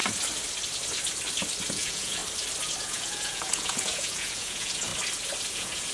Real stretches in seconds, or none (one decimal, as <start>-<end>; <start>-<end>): 0.0-1.7; 2.2-2.8; 4.9-5.5

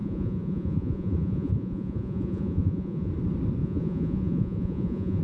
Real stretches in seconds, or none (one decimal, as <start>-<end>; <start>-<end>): 3.1-3.6

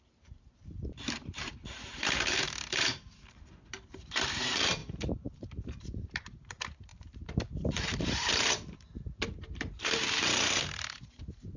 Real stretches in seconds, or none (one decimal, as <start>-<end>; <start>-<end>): none

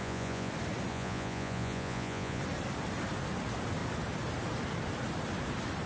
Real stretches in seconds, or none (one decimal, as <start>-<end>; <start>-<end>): 0.5-0.9; 2.4-5.9

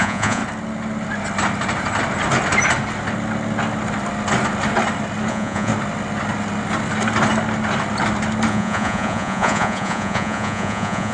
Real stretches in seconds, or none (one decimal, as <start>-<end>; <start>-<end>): 0.4-5.3; 5.7-8.5